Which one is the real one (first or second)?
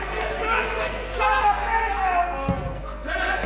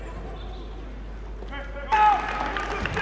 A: second